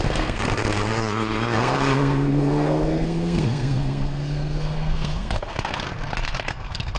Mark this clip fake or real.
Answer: fake